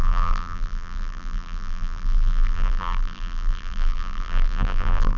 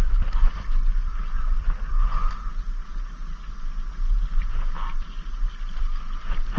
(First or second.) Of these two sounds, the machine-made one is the first